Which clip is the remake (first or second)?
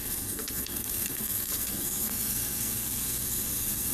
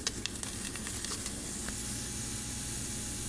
first